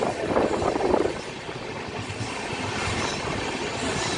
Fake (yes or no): no